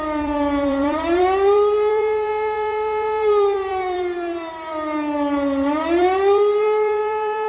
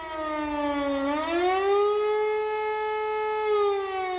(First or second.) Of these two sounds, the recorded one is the second